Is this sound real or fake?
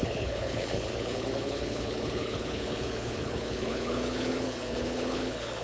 fake